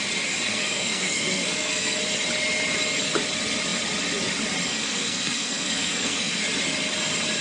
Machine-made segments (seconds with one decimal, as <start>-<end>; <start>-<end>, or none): 0.5-2.0; 4.7-6.4